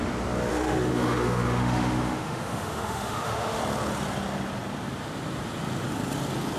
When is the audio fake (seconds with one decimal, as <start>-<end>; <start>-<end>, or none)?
0.5-3.6